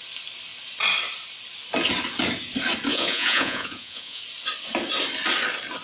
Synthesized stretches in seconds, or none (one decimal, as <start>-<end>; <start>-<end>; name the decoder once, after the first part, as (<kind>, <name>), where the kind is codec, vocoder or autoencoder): 2.9-4.2 (vocoder, Vocos)

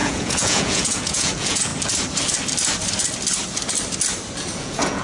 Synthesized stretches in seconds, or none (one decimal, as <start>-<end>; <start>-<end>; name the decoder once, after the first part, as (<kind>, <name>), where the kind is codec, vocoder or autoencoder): 0.0-1.7 (vocoder, Vocos); 4.6-5.0

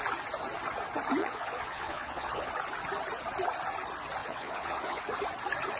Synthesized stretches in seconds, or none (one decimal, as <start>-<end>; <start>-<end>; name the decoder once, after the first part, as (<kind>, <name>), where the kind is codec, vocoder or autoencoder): 1.2-2.5 (vocoder, Vocos); 4.2-5.0

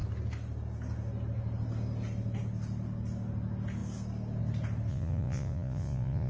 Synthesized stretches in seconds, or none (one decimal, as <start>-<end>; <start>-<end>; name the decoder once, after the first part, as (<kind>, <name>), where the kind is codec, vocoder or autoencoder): 4.9-6.3 (vocoder, Vocos)

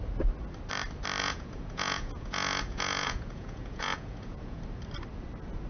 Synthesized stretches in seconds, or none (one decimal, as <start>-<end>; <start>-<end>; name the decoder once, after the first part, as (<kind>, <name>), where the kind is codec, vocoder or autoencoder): 1.2-4.6 (vocoder, Vocos)

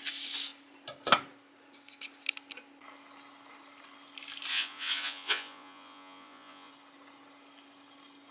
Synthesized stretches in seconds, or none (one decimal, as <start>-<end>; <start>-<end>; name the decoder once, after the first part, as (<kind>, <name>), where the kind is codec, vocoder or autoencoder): 4.5-6.7 (vocoder, Vocos)

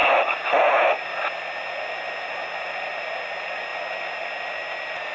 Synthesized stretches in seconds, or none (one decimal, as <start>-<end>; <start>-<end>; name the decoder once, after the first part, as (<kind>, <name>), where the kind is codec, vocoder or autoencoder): none